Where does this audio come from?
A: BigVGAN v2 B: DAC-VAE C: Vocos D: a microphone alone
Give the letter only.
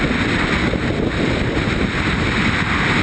D